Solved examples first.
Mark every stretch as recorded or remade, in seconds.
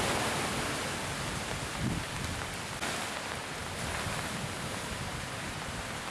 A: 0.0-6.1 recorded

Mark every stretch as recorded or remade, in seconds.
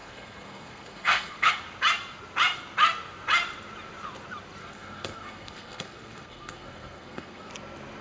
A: 0.0-1.5 remade; 1.5-4.6 recorded; 4.6-7.5 remade; 7.5-8.0 recorded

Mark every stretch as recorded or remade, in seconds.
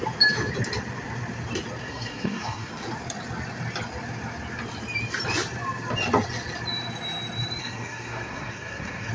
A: 0.0-1.8 recorded; 1.8-2.7 remade; 2.7-7.6 recorded; 7.6-9.1 remade